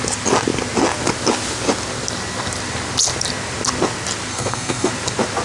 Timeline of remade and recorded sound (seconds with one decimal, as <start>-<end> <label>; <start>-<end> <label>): 0.0-4.3 recorded; 4.3-4.9 remade; 4.9-5.4 recorded